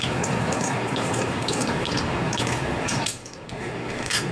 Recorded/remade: remade